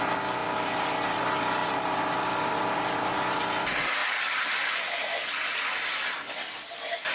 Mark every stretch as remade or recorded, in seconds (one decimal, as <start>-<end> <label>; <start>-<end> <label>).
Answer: 0.0-0.4 recorded; 0.4-1.2 remade; 1.2-1.6 recorded; 1.6-3.4 remade; 3.4-4.0 recorded; 4.0-6.5 remade; 6.5-7.1 recorded